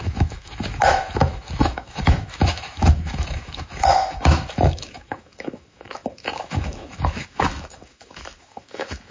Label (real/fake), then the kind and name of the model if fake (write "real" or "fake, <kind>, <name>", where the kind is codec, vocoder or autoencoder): fake, autoencoder, DAC-VAE